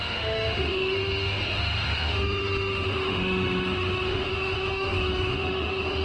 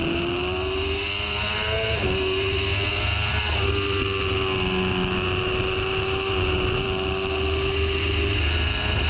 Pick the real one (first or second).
second